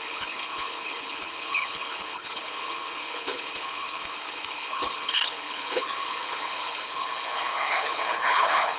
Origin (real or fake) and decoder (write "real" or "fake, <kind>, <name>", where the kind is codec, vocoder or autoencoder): fake, codec, HILCodec